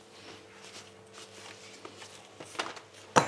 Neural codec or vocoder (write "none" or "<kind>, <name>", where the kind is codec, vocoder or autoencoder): none